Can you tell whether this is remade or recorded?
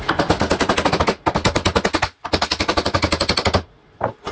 recorded